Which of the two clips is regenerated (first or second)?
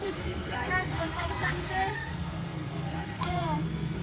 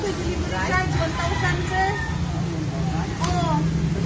first